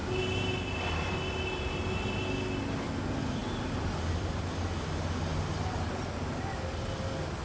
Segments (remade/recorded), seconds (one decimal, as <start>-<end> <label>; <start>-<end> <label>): 0.0-7.4 recorded

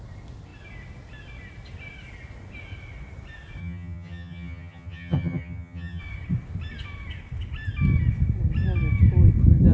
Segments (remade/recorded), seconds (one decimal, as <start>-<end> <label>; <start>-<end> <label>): 0.0-3.6 recorded; 3.6-6.0 remade; 6.0-9.7 recorded